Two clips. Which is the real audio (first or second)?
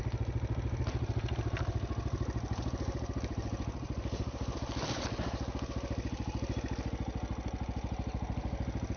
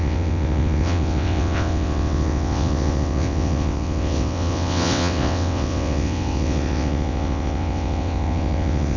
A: first